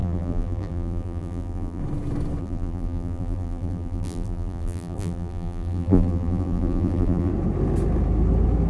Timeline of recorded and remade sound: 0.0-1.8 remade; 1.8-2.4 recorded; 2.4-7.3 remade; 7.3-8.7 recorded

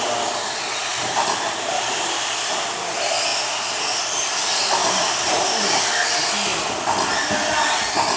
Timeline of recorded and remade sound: 0.0-0.9 recorded; 0.9-2.3 remade; 2.3-4.8 recorded; 4.8-5.8 remade; 5.8-8.2 recorded

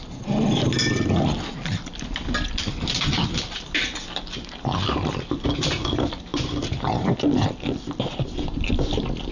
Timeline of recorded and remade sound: 0.0-9.3 recorded